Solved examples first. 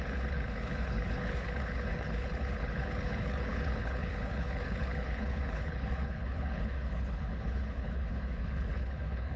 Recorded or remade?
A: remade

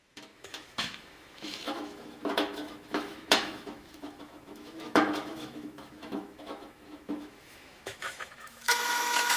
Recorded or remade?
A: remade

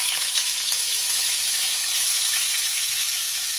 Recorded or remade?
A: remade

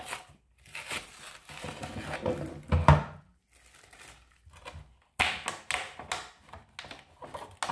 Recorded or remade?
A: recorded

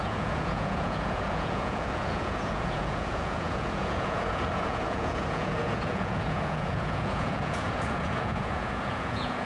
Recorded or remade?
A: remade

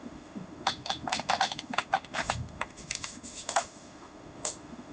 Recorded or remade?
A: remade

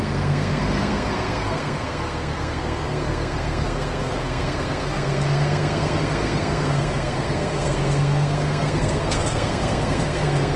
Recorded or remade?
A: remade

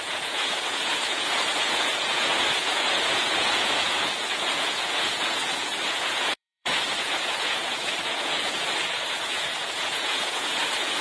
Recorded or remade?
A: remade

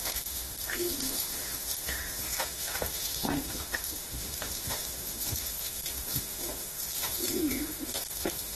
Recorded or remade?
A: remade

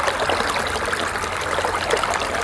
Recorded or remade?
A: recorded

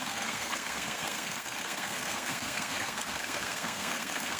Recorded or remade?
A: remade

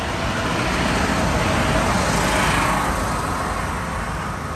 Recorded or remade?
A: recorded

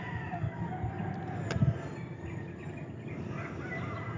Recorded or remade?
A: recorded